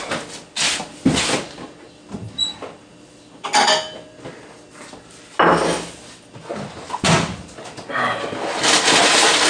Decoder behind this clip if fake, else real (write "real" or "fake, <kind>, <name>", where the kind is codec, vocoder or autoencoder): real